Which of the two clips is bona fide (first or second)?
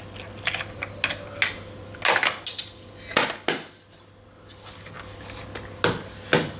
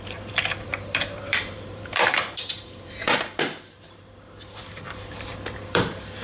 first